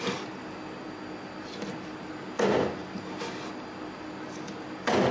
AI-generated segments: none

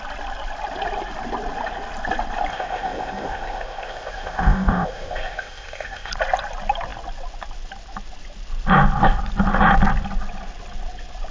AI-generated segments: 2.5-6.1 (codec, ZipCodec)

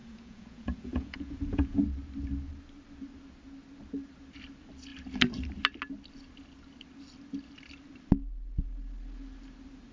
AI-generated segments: 0.0-1.8 (vocoder, Vocos)